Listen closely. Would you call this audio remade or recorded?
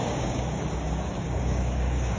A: remade